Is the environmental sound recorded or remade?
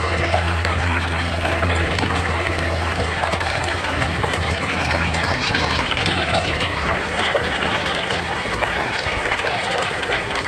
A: remade